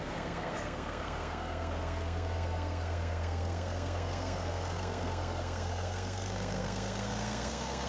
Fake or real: fake